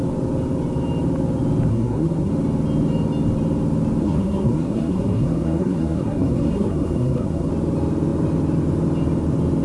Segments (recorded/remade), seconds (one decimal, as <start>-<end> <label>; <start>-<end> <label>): 0.0-1.7 recorded; 1.7-2.3 remade; 2.3-4.0 recorded; 4.0-7.5 remade; 7.5-9.6 recorded